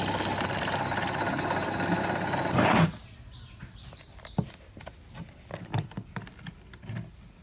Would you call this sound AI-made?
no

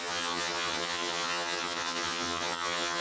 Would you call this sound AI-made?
yes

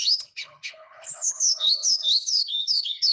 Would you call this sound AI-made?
yes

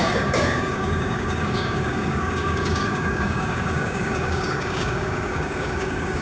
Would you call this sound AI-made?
yes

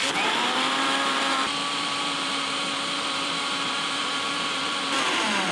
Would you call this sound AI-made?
yes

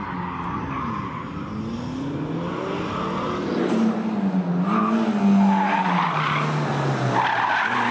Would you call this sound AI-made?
no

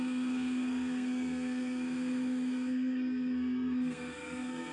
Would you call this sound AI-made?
yes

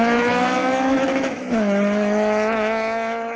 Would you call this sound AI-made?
yes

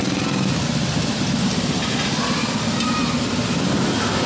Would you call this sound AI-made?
no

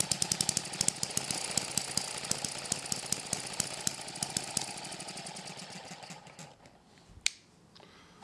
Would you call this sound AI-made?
no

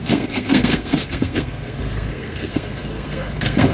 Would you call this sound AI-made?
yes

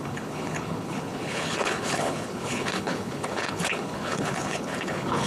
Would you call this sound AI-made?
yes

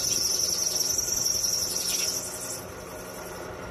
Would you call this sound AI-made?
no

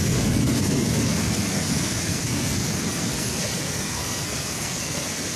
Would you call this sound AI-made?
yes